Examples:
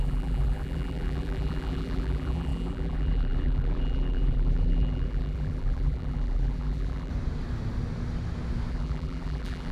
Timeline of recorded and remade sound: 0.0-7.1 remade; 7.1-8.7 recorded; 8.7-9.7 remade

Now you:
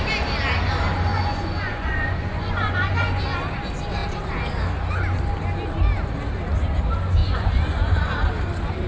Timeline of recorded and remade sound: 0.0-1.1 recorded; 1.1-3.2 remade; 3.2-7.2 recorded; 7.2-8.0 remade; 8.0-8.9 recorded

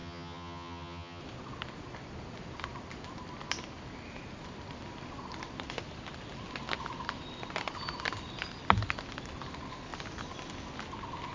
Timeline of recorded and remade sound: 0.0-1.2 remade; 1.2-11.3 recorded

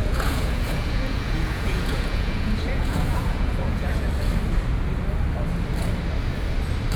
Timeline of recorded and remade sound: 0.0-4.1 remade; 4.1-7.0 recorded

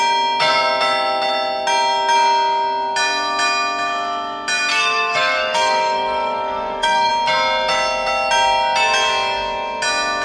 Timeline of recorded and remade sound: 0.0-4.7 recorded; 4.7-7.1 remade; 7.1-10.2 recorded

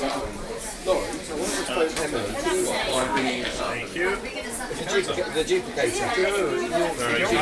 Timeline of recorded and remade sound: 0.0-2.9 recorded; 2.9-3.6 remade; 3.6-7.4 recorded